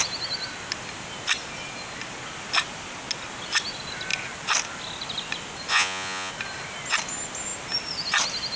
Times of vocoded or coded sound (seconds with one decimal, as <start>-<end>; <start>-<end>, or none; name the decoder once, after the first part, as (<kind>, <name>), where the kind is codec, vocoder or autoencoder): 5.7-6.3 (vocoder, Vocos)